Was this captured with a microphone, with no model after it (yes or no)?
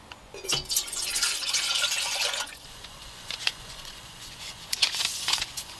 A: no